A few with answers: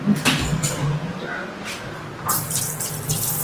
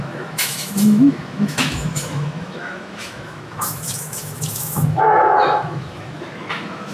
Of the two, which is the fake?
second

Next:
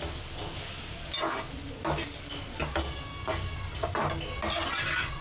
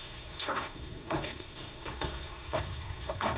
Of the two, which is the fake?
second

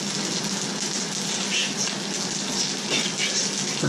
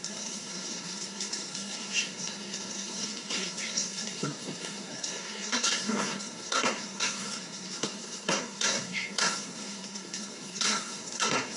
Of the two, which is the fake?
second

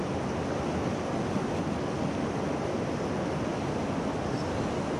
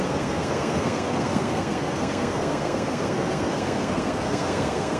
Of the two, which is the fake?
second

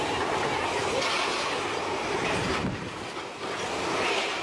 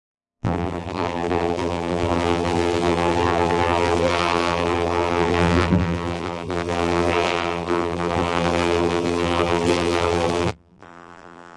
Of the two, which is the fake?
second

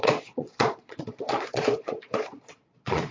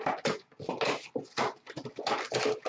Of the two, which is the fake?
first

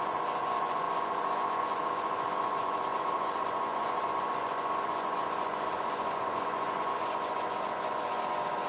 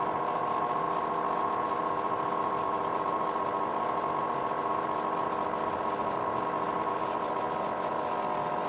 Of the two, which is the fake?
first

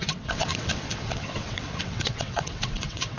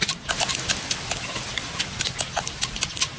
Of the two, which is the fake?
first